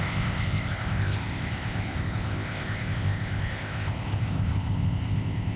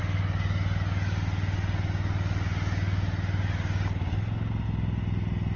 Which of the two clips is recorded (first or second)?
second